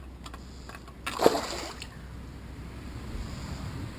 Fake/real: real